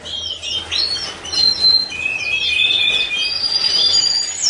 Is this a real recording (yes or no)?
yes